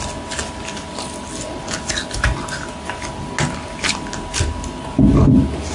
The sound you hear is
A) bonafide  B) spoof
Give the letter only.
A